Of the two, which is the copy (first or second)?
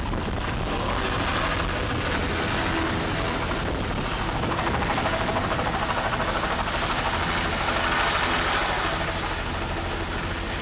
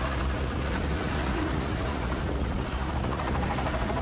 second